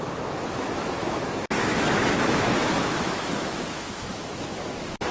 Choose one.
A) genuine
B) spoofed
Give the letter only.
B